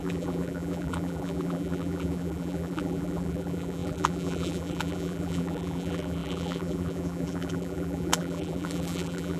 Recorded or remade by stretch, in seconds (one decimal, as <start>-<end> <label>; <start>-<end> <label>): 0.0-9.4 remade